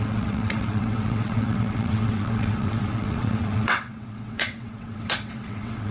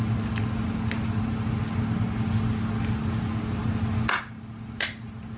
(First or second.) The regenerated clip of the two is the first